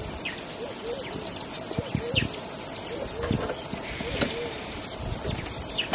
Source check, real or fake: real